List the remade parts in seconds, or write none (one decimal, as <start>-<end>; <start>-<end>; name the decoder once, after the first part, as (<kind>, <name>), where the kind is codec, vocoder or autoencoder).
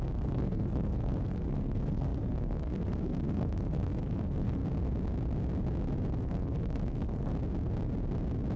0.0-4.6 (codec, SNAC); 6.2-7.3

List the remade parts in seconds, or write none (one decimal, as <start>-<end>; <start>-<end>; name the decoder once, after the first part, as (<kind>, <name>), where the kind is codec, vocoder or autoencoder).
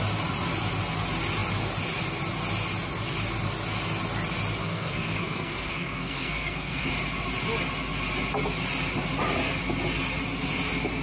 4.6-6.9 (codec, SNAC)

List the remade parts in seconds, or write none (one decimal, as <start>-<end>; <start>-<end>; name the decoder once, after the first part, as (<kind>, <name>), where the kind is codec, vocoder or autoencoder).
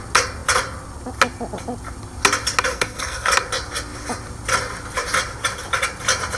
2.7-3.3 (codec, SNAC)